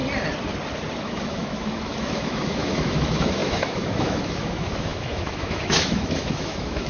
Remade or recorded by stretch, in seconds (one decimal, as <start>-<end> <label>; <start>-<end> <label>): 0.0-1.0 recorded; 1.0-6.9 remade